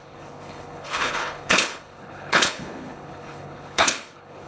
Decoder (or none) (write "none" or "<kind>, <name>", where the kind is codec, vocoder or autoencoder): codec, HILCodec